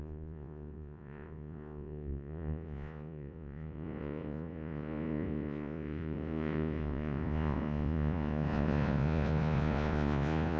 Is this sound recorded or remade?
remade